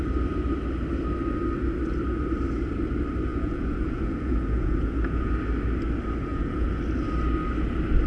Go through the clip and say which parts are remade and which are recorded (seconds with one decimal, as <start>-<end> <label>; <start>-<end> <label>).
0.0-3.3 recorded; 3.3-5.3 remade; 5.3-6.3 recorded; 6.3-6.8 remade; 6.8-8.1 recorded